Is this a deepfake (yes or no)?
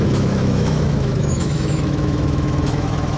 yes